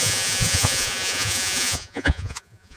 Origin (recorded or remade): remade